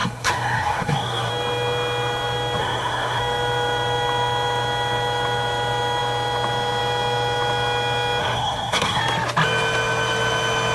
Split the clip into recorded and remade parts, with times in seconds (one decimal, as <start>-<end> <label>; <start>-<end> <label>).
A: 0.0-1.3 remade; 1.3-2.6 recorded; 2.6-3.2 remade; 3.2-8.2 recorded; 8.2-9.0 remade; 9.0-10.7 recorded